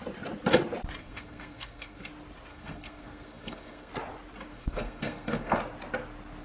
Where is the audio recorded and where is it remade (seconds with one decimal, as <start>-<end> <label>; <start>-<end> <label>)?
0.0-1.0 recorded; 1.0-2.1 remade; 2.1-2.5 recorded; 2.5-3.9 remade; 3.9-4.5 recorded; 4.5-5.6 remade; 5.6-6.4 recorded